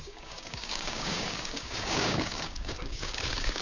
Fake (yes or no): yes